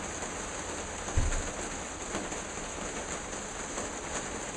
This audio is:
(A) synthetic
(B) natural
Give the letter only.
B